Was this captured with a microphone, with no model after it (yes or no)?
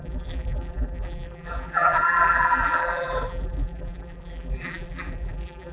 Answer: no